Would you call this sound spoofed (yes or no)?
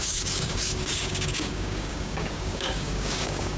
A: yes